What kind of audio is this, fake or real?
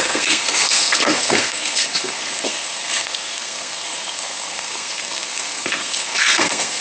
fake